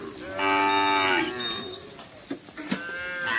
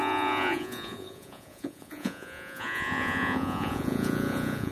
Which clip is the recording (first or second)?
first